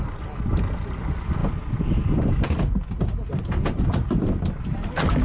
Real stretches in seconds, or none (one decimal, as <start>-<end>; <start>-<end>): 0.0-5.2